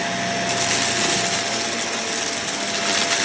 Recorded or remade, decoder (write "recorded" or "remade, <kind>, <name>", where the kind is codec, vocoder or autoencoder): recorded